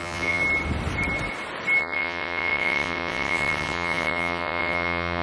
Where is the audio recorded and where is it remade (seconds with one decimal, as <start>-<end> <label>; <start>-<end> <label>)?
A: 0.0-0.4 remade; 0.4-1.8 recorded; 1.8-5.2 remade